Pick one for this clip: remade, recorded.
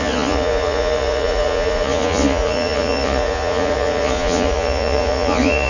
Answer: remade